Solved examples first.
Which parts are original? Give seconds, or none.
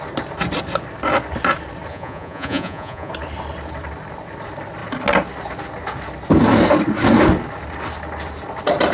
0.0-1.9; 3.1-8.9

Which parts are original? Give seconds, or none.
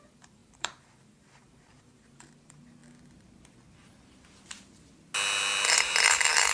2.8-5.8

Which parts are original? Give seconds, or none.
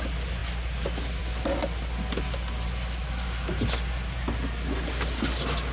0.0-5.7